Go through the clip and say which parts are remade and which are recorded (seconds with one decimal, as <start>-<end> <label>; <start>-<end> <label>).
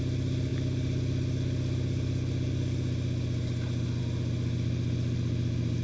0.0-5.8 recorded